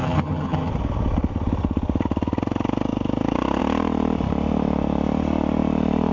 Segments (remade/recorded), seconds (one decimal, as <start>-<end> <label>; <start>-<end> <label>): 0.0-0.7 remade; 0.7-6.1 recorded